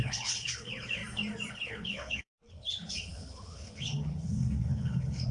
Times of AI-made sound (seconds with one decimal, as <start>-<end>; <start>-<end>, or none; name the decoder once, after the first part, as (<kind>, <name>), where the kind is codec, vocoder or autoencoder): 0.0-1.0 (codec, HILCodec); 1.5-5.3